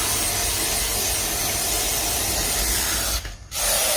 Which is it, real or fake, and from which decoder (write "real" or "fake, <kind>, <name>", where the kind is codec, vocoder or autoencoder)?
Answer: real